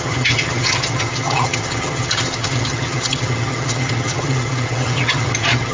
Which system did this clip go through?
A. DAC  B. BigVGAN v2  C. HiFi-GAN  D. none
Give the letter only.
C